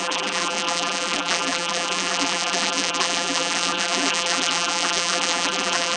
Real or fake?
fake